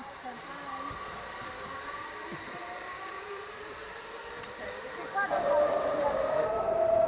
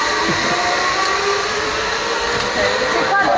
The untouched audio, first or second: second